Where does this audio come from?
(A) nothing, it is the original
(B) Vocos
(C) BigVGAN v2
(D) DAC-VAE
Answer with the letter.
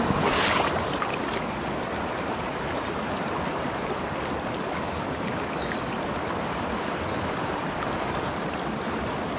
A